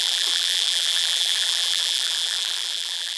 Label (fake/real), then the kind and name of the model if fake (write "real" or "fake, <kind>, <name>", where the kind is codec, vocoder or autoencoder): fake, vocoder, BigVGAN v2